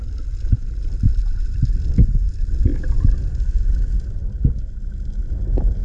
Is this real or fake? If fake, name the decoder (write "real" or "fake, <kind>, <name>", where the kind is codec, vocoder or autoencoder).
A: real